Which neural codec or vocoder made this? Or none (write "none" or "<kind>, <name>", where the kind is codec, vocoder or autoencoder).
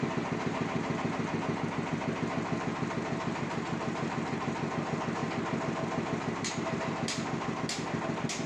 none